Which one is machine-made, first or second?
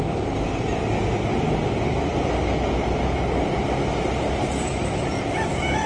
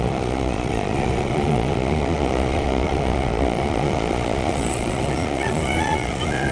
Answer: second